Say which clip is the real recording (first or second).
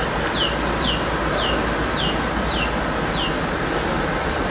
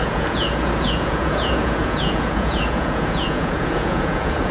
first